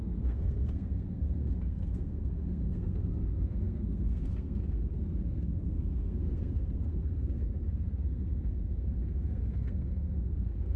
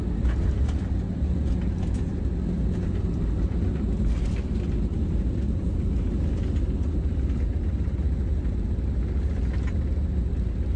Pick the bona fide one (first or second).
second